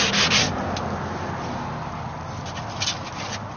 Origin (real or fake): real